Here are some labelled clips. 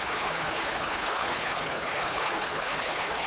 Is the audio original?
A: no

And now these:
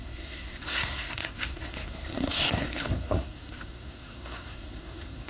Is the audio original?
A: no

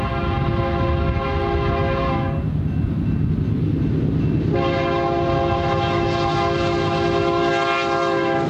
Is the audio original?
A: yes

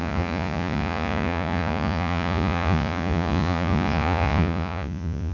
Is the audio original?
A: no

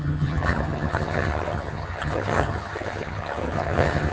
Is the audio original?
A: no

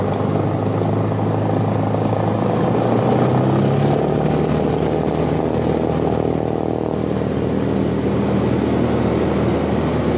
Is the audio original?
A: yes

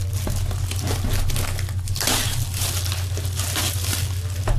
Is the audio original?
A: yes